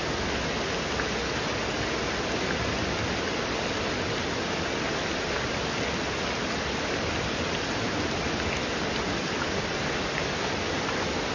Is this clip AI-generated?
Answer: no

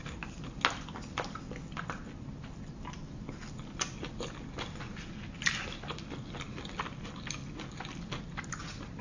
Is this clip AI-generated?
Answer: no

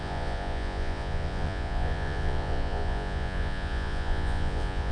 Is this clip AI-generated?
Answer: yes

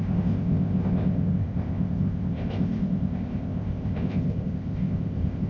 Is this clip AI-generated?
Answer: yes